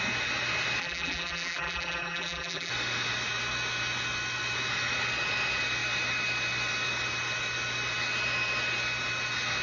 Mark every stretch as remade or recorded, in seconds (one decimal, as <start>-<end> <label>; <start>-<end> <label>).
0.0-0.8 recorded; 0.8-2.7 remade; 2.7-9.6 recorded